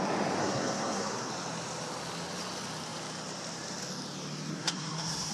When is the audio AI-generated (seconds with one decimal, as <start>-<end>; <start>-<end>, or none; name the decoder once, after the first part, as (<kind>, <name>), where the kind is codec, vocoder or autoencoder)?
0.4-1.3 (codec, SNAC); 4.5-5.3